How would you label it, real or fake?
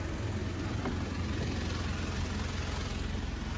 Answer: real